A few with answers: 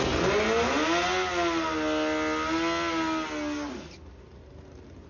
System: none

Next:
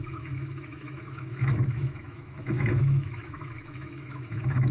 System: autoencoder, DAC-VAE